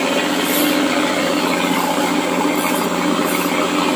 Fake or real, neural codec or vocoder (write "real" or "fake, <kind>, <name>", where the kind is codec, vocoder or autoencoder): real